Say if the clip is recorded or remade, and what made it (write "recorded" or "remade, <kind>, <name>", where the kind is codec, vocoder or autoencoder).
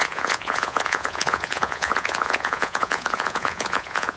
remade, vocoder, Vocos